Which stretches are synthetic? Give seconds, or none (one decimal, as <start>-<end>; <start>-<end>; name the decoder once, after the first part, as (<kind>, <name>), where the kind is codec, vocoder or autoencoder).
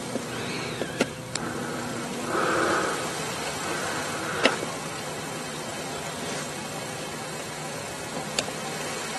1.9-3.9 (vocoder, BigVGAN v2)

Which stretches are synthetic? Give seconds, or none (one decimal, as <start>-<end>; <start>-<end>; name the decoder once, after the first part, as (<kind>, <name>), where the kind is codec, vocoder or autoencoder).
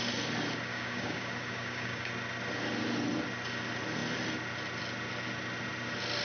0.7-2.1 (codec, DAC)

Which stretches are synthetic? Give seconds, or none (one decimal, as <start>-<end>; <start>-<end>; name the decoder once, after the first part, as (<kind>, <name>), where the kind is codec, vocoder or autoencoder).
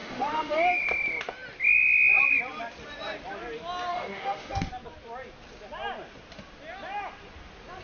0.0-0.8 (autoencoder, DAC-VAE); 3.9-4.7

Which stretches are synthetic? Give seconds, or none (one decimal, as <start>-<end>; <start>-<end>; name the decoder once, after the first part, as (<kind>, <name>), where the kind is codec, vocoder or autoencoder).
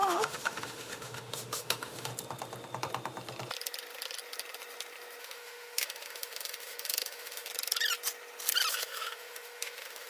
0.0-2.1 (autoencoder, DAC-VAE); 5.2-7.5; 8.7-10.1